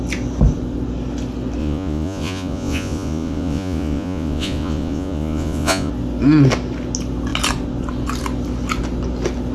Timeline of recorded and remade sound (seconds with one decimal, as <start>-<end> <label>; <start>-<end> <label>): 0.0-1.6 recorded; 1.6-5.9 remade; 5.9-9.5 recorded